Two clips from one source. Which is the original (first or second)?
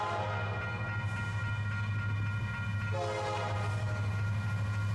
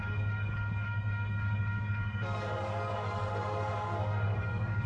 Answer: first